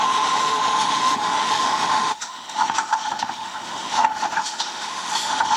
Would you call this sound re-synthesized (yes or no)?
yes